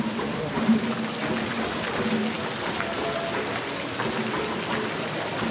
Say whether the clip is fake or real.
real